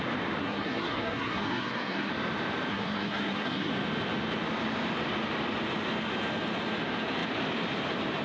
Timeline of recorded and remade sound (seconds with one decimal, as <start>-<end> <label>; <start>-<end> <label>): 0.0-0.4 recorded; 0.4-2.1 remade; 2.1-2.7 recorded; 2.7-3.7 remade; 3.7-8.2 recorded